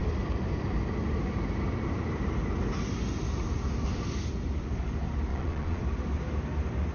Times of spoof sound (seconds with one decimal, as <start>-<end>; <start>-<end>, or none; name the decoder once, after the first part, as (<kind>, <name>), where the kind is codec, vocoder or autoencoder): 5.3-5.8 (vocoder, Vocos)